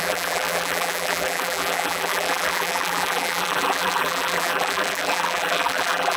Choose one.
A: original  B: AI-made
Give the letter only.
B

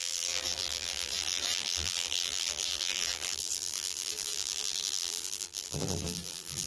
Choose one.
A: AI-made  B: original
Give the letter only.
A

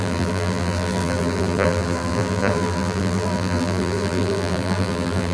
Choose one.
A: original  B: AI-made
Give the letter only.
B